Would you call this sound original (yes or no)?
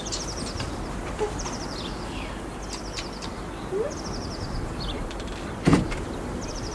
no